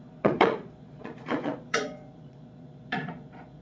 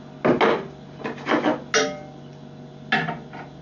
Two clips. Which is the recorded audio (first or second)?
second